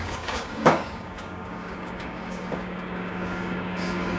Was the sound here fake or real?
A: fake